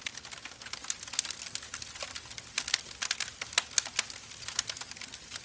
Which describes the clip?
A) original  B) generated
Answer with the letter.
A